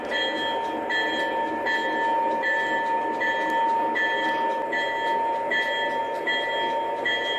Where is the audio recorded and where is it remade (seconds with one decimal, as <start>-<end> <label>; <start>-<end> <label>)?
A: 0.0-7.4 recorded